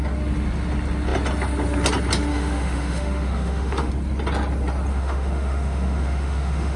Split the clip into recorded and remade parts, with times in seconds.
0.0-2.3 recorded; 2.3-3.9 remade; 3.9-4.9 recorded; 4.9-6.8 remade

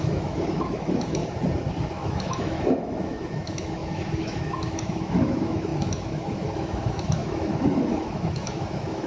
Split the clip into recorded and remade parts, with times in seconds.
0.0-1.2 remade; 1.2-1.9 recorded; 1.9-9.1 remade

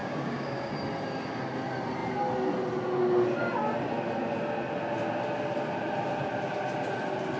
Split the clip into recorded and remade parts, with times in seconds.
0.0-0.7 remade; 0.7-7.4 recorded

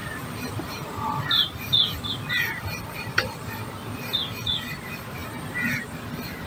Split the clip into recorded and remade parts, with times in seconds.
0.0-1.3 remade; 1.3-2.5 recorded; 2.5-3.4 remade; 3.4-6.5 recorded